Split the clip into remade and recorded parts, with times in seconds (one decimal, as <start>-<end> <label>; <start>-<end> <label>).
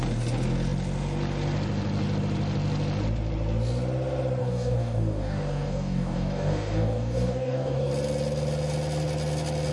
0.0-4.4 recorded; 4.4-7.9 remade; 7.9-9.7 recorded